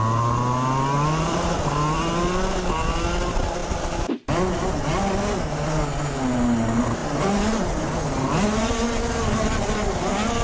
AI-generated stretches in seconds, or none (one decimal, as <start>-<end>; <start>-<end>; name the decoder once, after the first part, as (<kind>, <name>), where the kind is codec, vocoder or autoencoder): none